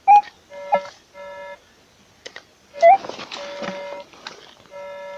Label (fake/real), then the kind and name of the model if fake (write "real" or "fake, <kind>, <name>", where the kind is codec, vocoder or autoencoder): real